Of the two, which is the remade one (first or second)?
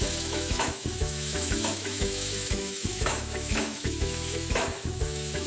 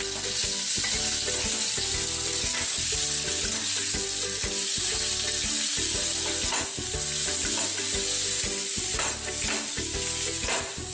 first